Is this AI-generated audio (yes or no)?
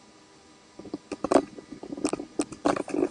no